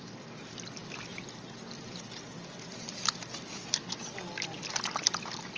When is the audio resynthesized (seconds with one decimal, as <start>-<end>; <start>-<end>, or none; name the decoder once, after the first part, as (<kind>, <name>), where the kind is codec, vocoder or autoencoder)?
none